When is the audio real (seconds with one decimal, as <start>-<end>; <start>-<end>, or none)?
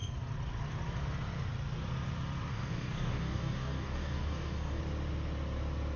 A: 0.0-2.5; 4.8-6.0